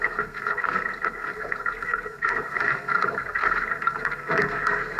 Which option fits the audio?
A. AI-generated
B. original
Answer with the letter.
A